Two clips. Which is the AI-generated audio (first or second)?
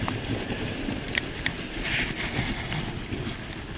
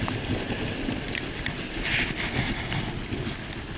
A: first